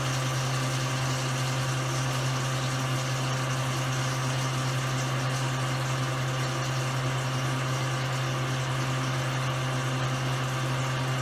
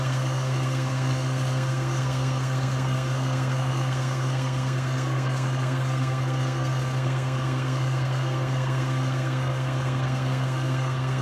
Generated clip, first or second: second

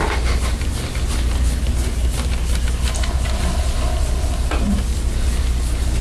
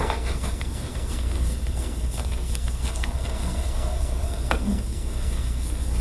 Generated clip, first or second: second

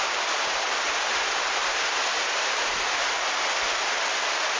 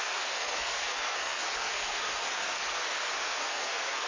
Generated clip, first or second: second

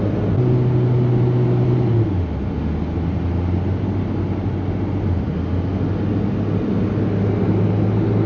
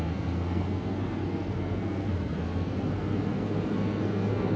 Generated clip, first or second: second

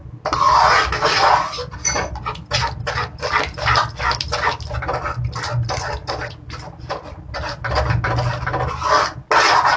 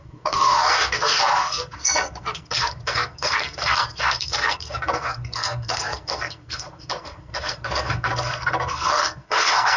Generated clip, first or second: second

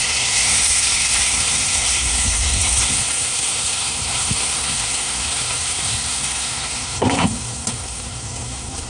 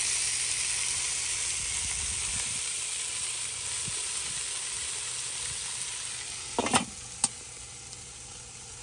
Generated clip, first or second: first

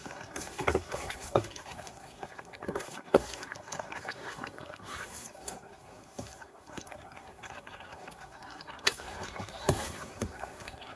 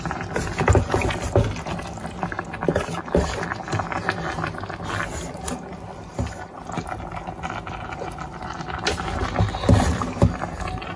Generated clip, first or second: first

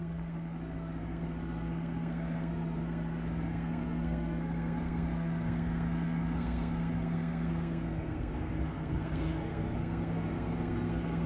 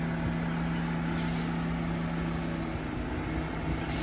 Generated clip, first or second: first